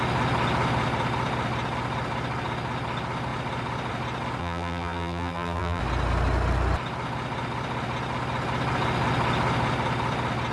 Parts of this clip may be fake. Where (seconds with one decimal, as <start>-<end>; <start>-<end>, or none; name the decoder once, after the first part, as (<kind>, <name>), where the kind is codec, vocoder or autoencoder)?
4.4-5.8 (vocoder, BigVGAN v2)